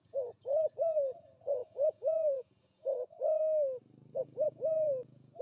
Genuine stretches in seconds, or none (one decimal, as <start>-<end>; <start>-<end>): 3.4-4.2